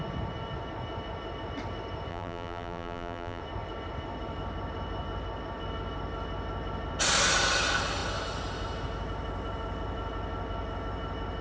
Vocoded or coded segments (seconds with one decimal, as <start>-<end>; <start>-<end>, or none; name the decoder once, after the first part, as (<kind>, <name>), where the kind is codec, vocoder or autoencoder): 2.1-3.4 (vocoder, BigVGAN v2)